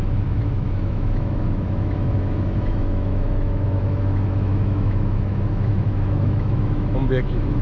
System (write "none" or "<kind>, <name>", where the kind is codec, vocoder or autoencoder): autoencoder, DAC-VAE